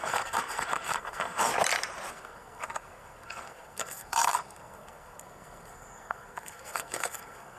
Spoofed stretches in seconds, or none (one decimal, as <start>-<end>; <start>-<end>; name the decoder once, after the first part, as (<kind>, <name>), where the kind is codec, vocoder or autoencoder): 0.0-1.5 (codec, SNAC); 2.1-7.6